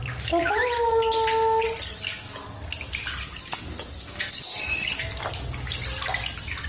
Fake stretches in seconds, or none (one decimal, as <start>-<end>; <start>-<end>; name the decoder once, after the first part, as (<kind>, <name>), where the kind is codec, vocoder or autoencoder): none